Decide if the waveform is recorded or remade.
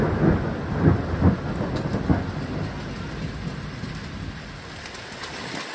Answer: recorded